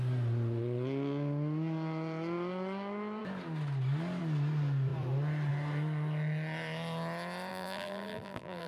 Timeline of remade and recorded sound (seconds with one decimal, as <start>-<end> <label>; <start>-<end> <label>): 0.0-7.5 recorded; 7.5-8.7 remade